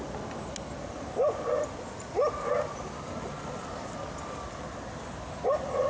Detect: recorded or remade recorded